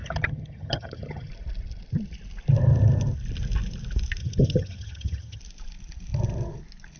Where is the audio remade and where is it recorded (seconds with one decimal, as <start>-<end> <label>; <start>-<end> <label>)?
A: 0.0-1.3 remade; 1.3-4.2 recorded; 4.2-5.4 remade; 5.4-7.0 recorded

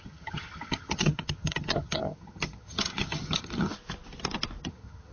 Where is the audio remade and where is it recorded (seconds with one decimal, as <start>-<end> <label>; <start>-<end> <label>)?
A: 0.0-3.7 remade; 3.7-4.6 recorded; 4.6-5.1 remade

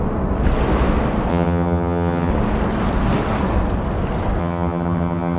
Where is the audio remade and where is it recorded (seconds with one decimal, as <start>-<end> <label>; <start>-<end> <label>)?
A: 0.0-1.3 recorded; 1.3-2.3 remade; 2.3-4.4 recorded; 4.4-5.4 remade

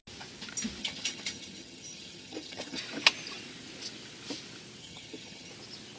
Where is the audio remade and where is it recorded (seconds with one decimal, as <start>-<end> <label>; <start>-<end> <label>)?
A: 0.0-0.8 recorded; 0.8-2.8 remade; 2.8-4.8 recorded; 4.8-5.5 remade; 5.5-6.0 recorded

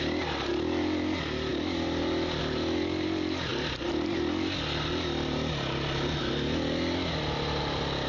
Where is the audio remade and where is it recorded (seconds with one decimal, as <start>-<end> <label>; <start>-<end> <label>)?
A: 0.0-8.1 recorded

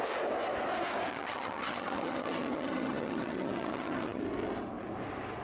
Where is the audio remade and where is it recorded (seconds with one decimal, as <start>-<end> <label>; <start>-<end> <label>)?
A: 0.0-1.1 recorded; 1.1-4.2 remade; 4.2-5.4 recorded

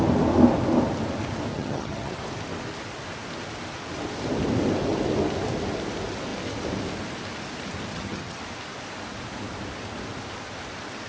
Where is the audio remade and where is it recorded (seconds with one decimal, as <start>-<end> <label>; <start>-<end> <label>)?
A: 0.0-1.5 recorded; 1.5-2.2 remade; 2.2-7.9 recorded; 7.9-8.4 remade; 8.4-11.1 recorded